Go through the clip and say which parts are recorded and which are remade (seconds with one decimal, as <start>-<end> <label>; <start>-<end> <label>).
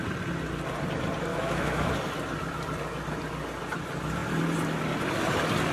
0.0-1.3 recorded; 1.3-1.9 remade; 1.9-5.7 recorded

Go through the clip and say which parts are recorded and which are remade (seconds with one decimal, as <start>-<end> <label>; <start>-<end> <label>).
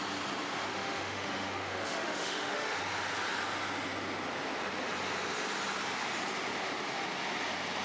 0.0-0.7 recorded; 0.7-2.8 remade; 2.8-7.8 recorded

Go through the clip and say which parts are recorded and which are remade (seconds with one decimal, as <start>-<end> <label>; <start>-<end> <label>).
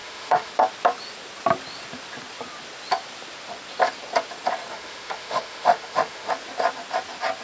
0.0-0.5 remade; 0.5-4.7 recorded; 4.7-6.3 remade; 6.3-7.4 recorded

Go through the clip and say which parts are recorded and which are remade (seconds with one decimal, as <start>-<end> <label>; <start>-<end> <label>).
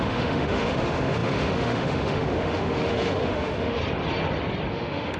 0.0-3.8 remade; 3.8-4.7 recorded; 4.7-5.2 remade